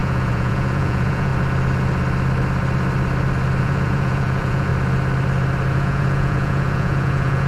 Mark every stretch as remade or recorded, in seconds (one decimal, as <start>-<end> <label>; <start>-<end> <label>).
0.0-1.3 remade; 1.3-3.6 recorded; 3.6-4.7 remade; 4.7-5.7 recorded; 5.7-7.5 remade